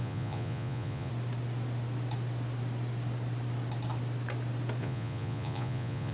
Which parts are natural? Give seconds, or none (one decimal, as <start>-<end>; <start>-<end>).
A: 1.1-4.8